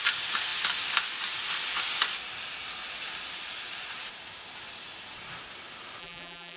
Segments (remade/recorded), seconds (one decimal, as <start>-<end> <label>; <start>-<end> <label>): 0.0-6.0 recorded; 6.0-6.6 remade